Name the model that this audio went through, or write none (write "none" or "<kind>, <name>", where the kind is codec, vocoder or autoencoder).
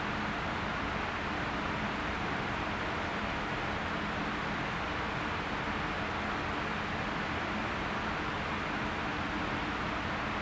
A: none